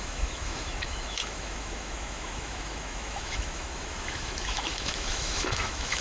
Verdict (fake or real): fake